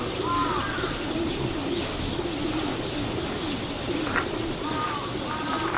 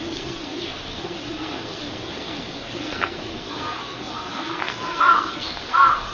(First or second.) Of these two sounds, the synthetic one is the second